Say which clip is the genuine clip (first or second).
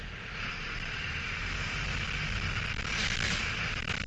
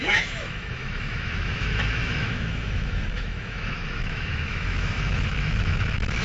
first